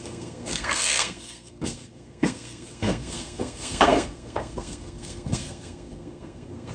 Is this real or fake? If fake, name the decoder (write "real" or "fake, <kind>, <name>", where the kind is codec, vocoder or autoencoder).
fake, codec, SNAC